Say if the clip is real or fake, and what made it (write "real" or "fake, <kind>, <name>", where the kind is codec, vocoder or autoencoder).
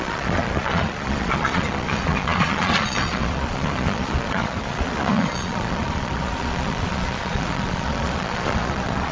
fake, vocoder, Vocos